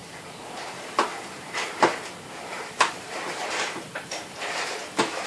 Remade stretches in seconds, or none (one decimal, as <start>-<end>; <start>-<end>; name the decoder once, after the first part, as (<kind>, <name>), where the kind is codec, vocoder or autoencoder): 1.1-2.1 (vocoder, BigVGAN v2); 2.5-4.8